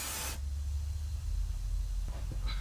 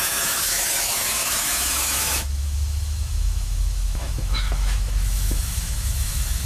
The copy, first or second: second